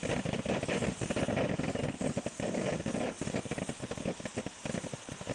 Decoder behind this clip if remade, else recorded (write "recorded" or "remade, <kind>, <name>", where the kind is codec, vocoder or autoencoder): recorded